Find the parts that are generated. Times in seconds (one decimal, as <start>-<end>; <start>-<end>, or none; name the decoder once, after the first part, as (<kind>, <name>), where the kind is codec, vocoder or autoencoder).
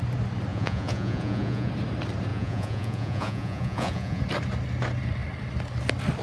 0.5-1.7 (vocoder, Vocos); 2.3-4.2